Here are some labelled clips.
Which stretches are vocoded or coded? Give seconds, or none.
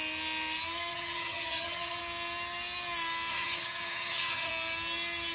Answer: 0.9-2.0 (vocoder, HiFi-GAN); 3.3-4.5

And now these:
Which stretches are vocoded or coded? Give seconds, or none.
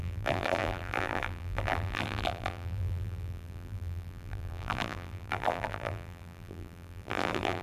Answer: 0.0-7.6 (vocoder, BigVGAN v2)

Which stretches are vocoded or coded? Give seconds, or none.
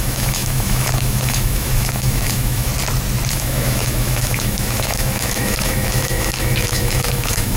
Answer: 0.0-2.7 (autoencoder, DAC-VAE); 3.3-7.6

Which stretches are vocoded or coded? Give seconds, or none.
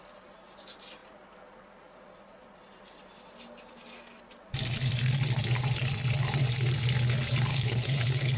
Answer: 7.5-8.4 (codec, HILCodec)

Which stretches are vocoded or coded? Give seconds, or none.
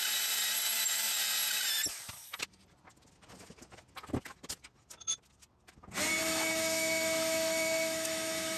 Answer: 6.2-8.6 (autoencoder, DAC-VAE)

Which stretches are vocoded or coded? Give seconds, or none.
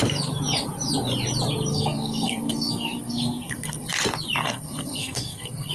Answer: 1.7-3.9 (codec, SNAC); 4.4-5.7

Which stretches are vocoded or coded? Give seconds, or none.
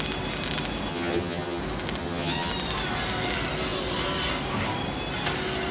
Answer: 0.9-1.6 (vocoder, HiFi-GAN); 2.0-2.5